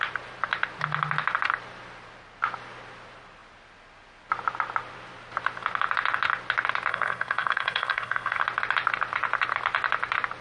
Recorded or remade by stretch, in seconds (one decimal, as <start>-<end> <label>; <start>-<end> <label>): 0.0-6.9 recorded; 6.9-8.4 remade; 8.4-10.4 recorded